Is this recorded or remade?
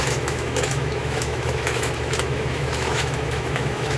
remade